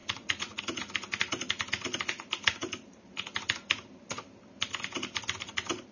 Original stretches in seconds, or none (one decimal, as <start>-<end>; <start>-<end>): 0.6-5.9